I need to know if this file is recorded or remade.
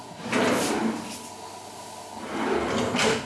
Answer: recorded